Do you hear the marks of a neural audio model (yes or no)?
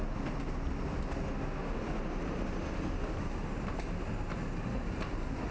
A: no